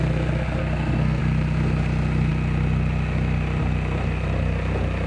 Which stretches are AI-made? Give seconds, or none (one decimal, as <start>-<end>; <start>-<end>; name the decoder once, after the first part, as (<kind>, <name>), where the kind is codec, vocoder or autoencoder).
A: 0.6-1.2 (codec, SNAC)